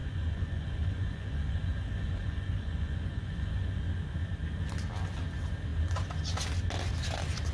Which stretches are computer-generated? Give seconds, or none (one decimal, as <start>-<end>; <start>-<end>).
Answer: 0.0-3.8

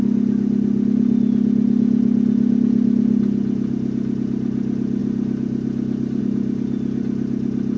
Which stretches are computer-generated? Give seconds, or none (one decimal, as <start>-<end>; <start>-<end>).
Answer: none